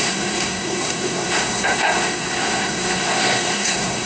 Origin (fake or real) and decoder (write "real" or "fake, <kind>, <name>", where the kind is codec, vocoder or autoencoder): fake, codec, SNAC